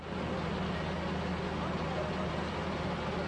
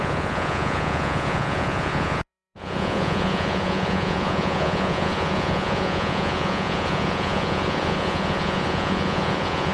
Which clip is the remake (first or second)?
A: second